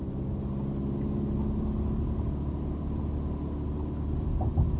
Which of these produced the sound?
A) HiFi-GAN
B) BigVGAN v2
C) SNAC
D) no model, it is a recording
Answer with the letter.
D